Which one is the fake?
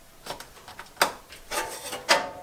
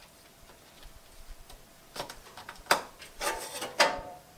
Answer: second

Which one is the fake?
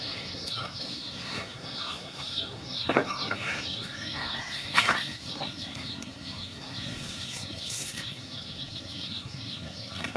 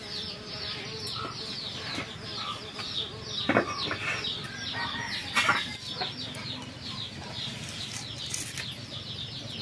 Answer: first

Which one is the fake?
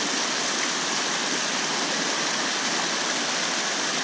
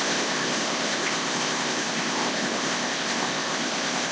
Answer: second